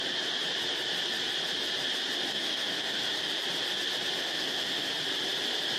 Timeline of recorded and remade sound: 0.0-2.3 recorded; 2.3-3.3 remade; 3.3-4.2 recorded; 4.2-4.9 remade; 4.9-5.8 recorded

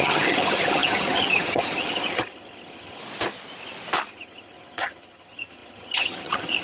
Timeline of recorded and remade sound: 0.0-3.0 remade; 3.0-4.1 recorded; 4.1-6.6 remade

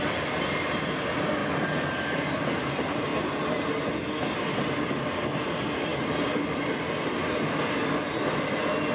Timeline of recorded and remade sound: 0.0-3.1 recorded; 3.1-4.8 remade; 4.8-5.9 recorded; 5.9-6.7 remade; 6.7-8.9 recorded

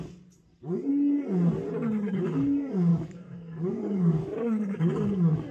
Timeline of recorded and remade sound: 0.0-2.9 recorded; 2.9-4.9 remade; 4.9-5.5 recorded